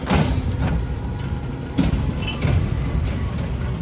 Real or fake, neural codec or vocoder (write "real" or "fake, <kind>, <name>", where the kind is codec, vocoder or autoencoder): real